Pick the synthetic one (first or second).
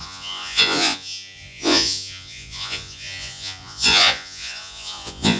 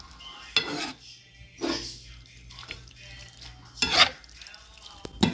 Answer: first